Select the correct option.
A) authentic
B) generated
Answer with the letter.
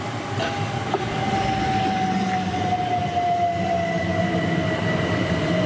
A